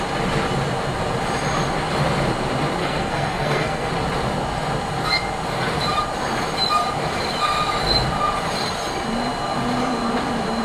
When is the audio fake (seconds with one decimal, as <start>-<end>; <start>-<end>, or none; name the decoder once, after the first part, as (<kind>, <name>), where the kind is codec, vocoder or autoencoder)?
2.8-3.9 (codec, SNAC)